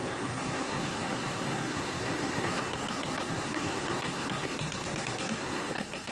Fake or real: fake